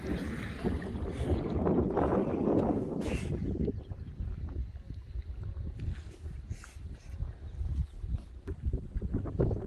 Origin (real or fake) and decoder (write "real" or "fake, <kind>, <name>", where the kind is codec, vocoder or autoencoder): real